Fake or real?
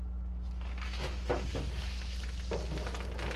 real